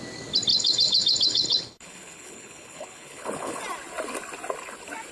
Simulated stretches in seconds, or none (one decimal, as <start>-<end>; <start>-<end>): 0.5-3.6